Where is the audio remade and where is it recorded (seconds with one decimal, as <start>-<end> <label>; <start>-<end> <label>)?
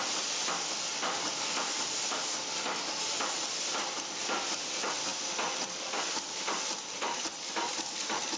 0.0-5.1 remade; 5.1-7.7 recorded; 7.7-8.4 remade